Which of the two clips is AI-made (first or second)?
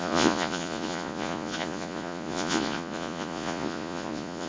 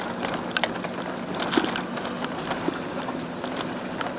first